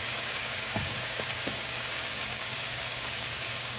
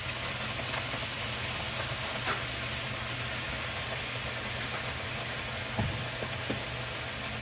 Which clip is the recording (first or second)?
second